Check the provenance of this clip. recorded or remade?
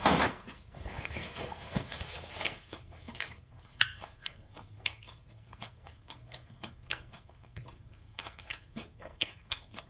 remade